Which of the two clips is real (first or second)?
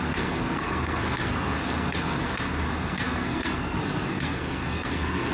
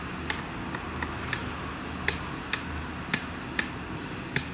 second